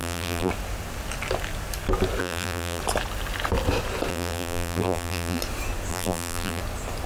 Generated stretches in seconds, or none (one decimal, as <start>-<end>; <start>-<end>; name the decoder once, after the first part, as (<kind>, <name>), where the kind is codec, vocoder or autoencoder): 0.0-0.5 (vocoder, BigVGAN v2); 2.2-2.8; 4.1-5.4; 5.9-6.6

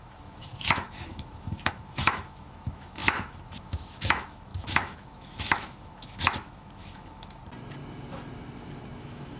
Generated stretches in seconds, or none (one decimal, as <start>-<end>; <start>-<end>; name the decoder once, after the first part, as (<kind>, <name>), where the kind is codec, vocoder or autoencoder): 0.0-7.4 (autoencoder, DAC-VAE); 9.0-9.4

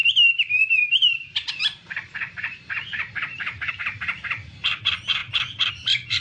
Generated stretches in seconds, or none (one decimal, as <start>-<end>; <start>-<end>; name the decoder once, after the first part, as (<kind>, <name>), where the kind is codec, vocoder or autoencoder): 0.0-5.2 (vocoder, BigVGAN v2); 5.7-6.2

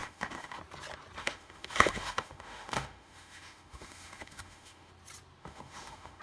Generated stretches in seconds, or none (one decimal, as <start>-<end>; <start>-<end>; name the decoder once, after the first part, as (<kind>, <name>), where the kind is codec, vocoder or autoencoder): 0.0-0.6 (autoencoder, DAC-VAE); 1.2-4.9; 5.4-6.2

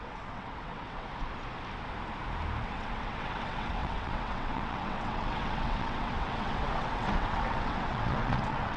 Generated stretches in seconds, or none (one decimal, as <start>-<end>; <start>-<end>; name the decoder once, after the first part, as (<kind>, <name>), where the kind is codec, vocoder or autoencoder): 0.0-1.1 (vocoder, WaveNeXt); 2.6-8.8

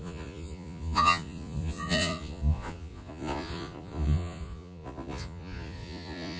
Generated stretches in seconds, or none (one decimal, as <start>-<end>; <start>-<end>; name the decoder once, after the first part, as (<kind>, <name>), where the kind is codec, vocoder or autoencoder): 0.0-6.4 (vocoder, Vocos)

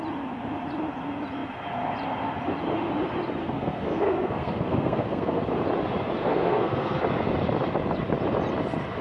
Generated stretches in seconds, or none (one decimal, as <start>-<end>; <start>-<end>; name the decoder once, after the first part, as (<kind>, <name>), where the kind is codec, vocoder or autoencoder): 3.4-5.4 (codec, SNAC); 6.2-7.0

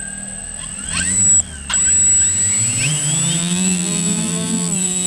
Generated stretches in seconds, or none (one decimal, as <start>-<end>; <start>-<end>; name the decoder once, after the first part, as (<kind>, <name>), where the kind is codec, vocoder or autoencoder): 3.4-5.1 (vocoder, BigVGAN v2)